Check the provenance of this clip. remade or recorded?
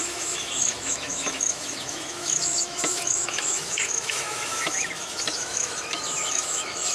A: remade